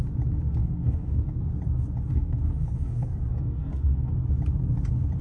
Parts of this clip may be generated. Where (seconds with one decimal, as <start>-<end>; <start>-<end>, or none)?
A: 0.6-1.4; 2.1-4.1